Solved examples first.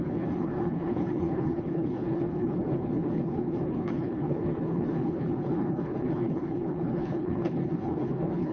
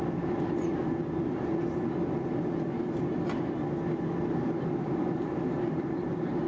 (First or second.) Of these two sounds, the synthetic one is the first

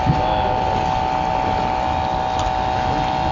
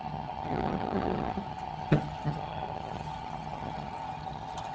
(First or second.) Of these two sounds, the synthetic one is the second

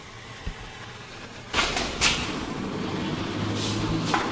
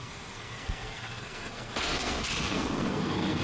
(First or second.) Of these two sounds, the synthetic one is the second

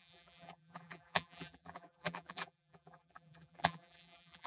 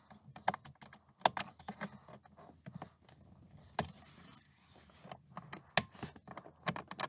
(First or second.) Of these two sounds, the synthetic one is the first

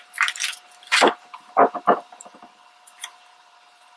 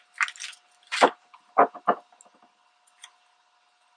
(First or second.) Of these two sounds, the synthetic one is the first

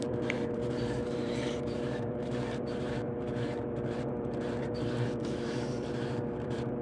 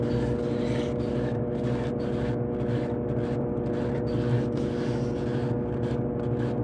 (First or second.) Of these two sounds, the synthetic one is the first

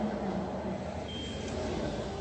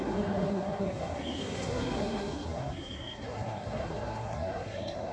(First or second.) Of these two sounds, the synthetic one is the second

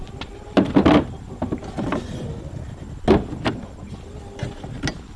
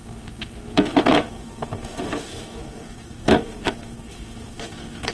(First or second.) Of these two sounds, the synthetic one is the second